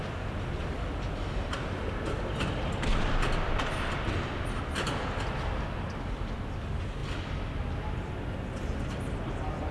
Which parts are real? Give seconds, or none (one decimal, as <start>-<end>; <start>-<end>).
0.0-9.7